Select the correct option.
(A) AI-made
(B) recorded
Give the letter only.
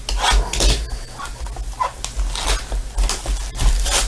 B